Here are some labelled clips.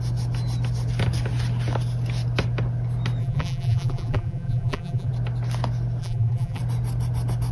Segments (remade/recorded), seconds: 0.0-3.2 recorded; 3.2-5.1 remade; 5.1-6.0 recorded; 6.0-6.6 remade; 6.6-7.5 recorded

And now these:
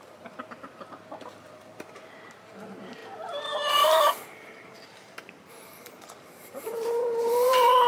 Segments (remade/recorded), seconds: 0.0-7.9 remade

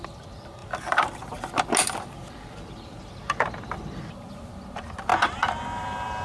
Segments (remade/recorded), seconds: 0.0-5.1 remade; 5.1-5.8 recorded; 5.8-6.2 remade

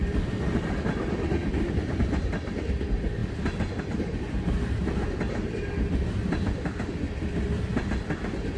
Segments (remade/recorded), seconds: 0.0-2.6 remade; 2.6-8.6 recorded

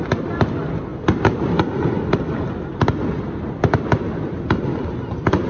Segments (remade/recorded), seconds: 0.0-5.5 recorded

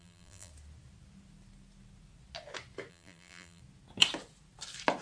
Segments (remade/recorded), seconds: 0.0-0.5 remade; 0.5-2.9 recorded; 2.9-3.6 remade; 3.6-5.0 recorded

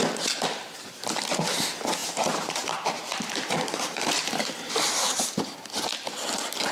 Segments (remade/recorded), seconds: 0.0-2.0 recorded; 2.0-5.4 remade; 5.4-6.7 recorded

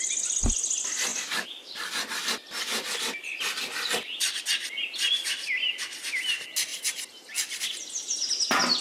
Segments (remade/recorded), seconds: 0.0-8.8 recorded